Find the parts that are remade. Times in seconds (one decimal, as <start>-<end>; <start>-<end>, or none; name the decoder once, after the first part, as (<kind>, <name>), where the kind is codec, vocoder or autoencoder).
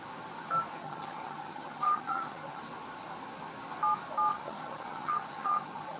0.7-2.6 (vocoder, HiFi-GAN); 4.3-6.0